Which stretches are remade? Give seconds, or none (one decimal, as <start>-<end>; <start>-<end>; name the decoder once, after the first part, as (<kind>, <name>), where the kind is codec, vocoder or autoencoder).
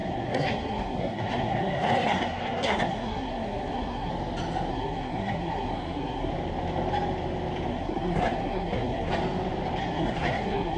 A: 0.0-4.1 (codec, SNAC); 4.7-6.3; 7.7-9.1; 9.8-10.8